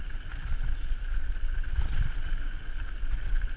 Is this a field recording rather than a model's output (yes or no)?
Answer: yes